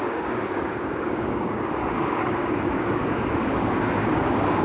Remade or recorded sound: remade